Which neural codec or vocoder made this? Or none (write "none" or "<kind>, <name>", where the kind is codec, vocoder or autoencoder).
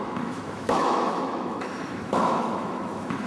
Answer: autoencoder, DAC-VAE